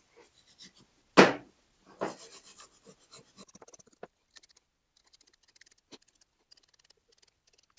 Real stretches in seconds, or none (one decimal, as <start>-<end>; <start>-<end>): 0.0-7.8